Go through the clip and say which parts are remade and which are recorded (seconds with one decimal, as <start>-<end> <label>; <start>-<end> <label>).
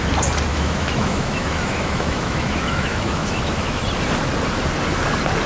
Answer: 0.0-0.5 recorded; 0.5-3.8 remade; 3.8-5.5 recorded